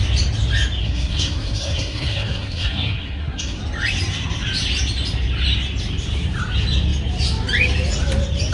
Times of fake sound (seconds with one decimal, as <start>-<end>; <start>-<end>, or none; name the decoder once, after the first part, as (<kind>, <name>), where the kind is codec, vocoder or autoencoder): 0.8-3.6 (codec, SNAC)